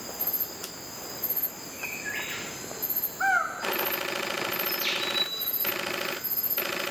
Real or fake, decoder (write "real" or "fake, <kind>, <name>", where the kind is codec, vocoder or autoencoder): real